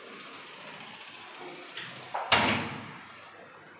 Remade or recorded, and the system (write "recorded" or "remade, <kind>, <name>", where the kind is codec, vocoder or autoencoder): recorded